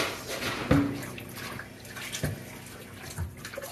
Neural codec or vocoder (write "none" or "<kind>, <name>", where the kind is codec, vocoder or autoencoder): none